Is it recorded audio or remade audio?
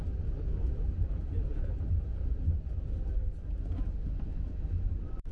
recorded